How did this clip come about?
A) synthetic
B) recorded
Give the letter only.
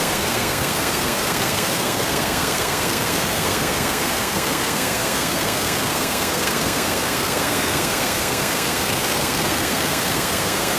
A